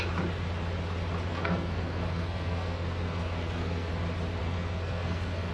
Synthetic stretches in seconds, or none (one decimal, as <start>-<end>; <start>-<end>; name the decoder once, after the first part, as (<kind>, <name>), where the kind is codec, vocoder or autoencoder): 1.3-3.9 (codec, SNAC); 4.4-5.5